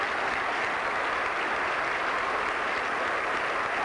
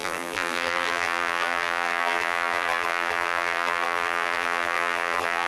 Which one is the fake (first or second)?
second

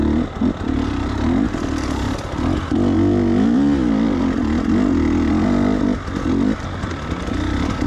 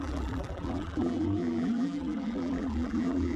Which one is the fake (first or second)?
second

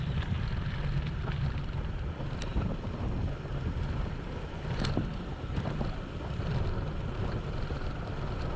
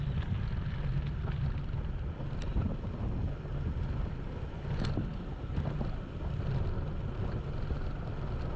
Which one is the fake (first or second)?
first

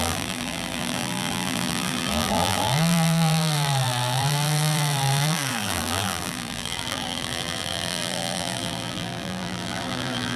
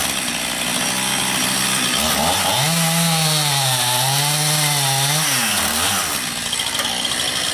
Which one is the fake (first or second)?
first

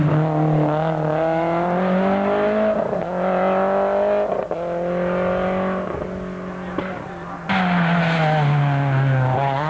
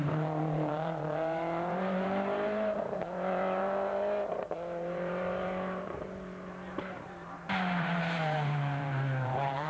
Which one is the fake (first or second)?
second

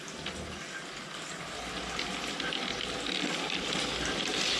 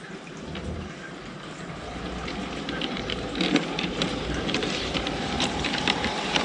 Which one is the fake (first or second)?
second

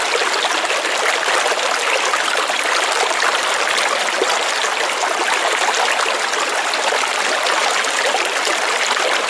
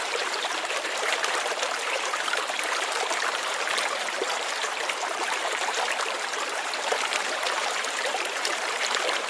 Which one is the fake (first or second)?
second